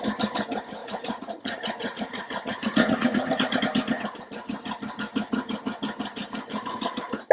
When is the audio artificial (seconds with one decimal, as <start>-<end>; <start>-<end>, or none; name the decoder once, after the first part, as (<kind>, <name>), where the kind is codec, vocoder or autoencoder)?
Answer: 0.8-3.6 (vocoder, Vocos)

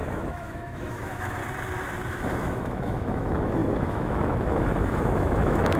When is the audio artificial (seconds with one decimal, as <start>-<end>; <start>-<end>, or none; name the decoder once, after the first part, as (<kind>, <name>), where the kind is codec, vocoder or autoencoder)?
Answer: 0.0-1.4 (autoencoder, DAC-VAE); 2.1-5.8

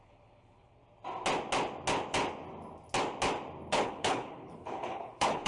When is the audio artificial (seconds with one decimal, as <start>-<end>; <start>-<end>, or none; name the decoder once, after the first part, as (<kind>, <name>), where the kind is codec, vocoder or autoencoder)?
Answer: 0.0-0.8 (codec, HILCodec); 3.7-5.5

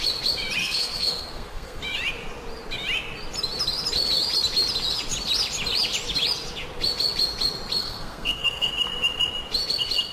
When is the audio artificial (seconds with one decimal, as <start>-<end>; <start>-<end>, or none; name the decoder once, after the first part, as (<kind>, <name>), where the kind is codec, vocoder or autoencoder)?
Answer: 0.6-1.8 (codec, SNAC); 7.8-8.7

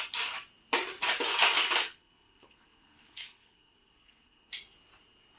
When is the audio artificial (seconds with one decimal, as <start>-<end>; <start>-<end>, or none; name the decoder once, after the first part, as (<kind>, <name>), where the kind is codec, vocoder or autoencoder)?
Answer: 1.8-4.5 (codec, SNAC)

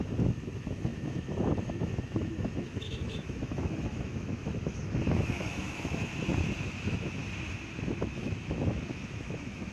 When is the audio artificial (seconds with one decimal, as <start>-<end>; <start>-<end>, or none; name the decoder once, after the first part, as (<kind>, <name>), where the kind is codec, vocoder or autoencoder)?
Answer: 0.0-6.1 (autoencoder, DAC-VAE); 6.6-7.2; 8.0-9.7